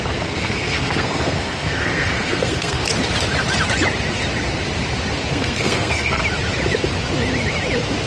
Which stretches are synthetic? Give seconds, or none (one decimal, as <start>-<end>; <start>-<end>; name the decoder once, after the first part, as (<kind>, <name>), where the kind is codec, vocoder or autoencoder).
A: 0.0-2.8 (codec, SNAC); 5.3-6.2